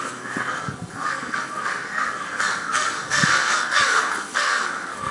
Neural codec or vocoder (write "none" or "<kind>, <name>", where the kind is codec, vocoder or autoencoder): codec, SNAC